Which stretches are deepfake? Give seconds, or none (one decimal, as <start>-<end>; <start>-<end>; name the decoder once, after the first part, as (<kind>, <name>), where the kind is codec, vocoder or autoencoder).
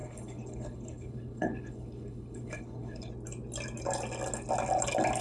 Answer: 0.0-3.1 (codec, HILCodec)